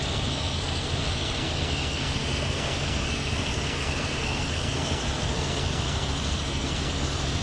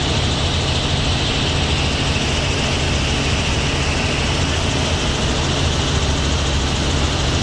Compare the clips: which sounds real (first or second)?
second